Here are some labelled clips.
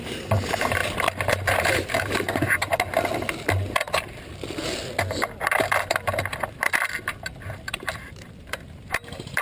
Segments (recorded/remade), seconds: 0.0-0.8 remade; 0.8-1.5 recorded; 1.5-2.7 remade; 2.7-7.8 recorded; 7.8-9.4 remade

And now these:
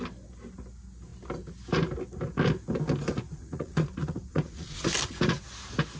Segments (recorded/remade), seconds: 0.0-3.1 recorded; 3.1-4.8 remade; 4.8-6.0 recorded

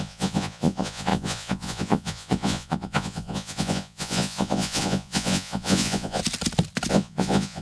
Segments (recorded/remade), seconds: 0.0-6.2 remade; 6.2-6.9 recorded; 6.9-7.6 remade